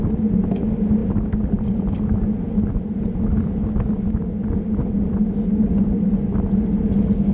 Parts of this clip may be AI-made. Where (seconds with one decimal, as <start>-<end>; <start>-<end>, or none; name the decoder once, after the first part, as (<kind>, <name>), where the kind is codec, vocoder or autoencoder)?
none